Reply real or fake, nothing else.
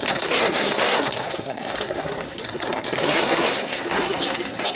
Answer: fake